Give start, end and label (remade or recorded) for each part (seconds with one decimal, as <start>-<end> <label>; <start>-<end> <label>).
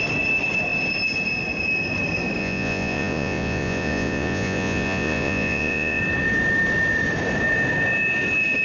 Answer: 0.0-2.4 recorded; 2.4-6.0 remade; 6.0-8.6 recorded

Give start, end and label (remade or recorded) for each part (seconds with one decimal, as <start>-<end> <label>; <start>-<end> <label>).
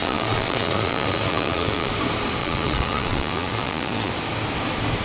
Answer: 0.0-1.9 remade; 1.9-2.4 recorded; 2.4-4.1 remade; 4.1-5.0 recorded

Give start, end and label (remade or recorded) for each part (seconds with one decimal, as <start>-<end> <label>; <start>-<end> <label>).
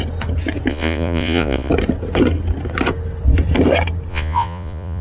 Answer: 0.0-0.7 recorded; 0.7-1.7 remade; 1.7-4.1 recorded; 4.1-5.0 remade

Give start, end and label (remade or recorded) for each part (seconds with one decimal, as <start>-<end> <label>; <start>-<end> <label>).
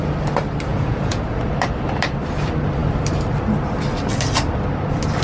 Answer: 0.0-0.7 recorded; 0.7-1.2 remade; 1.2-5.2 recorded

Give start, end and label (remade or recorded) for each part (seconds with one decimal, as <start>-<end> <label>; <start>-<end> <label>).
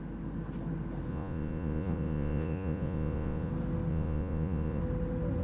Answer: 0.0-1.1 recorded; 1.1-3.5 remade; 3.5-3.9 recorded; 3.9-4.8 remade; 4.8-5.4 recorded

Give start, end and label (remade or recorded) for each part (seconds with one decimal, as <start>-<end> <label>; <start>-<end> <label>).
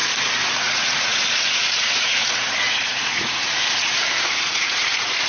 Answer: 0.0-0.6 recorded; 0.6-5.3 remade